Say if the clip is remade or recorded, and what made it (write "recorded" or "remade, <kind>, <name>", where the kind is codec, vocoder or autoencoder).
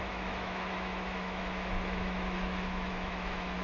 remade, autoencoder, DAC-VAE